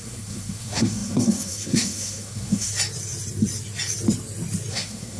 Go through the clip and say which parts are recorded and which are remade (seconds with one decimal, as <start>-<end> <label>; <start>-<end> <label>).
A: 0.0-2.7 remade; 2.7-4.7 recorded; 4.7-5.2 remade